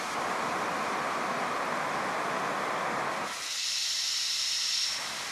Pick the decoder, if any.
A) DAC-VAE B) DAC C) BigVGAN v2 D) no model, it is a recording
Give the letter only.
D